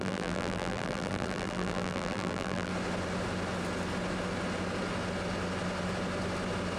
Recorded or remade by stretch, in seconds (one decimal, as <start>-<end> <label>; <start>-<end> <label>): 0.0-2.7 remade; 2.7-6.8 recorded